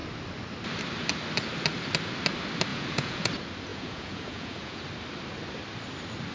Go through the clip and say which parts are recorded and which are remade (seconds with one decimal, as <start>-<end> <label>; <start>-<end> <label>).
0.0-2.7 recorded; 2.7-3.3 remade; 3.3-3.7 recorded; 3.7-4.8 remade; 4.8-6.3 recorded